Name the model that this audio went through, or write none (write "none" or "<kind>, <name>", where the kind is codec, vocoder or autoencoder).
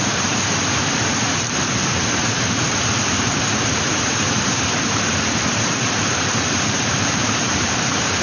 vocoder, BigVGAN v2